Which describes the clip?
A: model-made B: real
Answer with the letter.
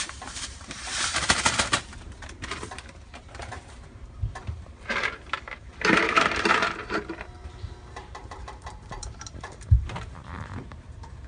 A